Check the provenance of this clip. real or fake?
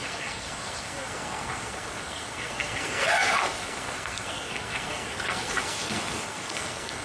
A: fake